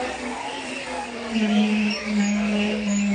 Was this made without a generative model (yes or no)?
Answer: no